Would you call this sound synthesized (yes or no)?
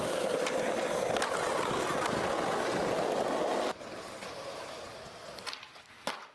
no